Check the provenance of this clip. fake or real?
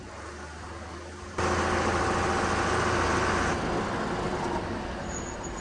real